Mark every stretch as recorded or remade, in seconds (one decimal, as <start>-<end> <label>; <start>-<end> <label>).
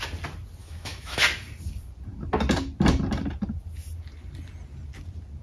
0.0-0.6 recorded; 0.6-1.2 remade; 1.2-5.4 recorded